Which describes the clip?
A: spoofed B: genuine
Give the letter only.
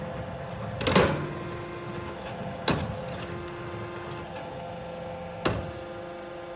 B